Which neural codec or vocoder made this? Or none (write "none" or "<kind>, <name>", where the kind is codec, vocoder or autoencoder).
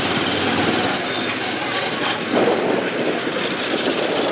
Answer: none